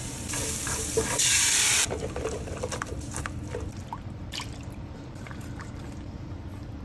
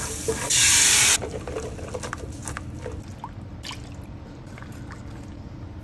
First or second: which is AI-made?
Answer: first